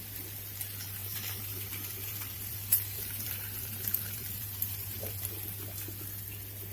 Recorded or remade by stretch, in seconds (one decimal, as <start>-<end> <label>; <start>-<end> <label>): 0.0-1.0 recorded; 1.0-5.0 remade; 5.0-6.7 recorded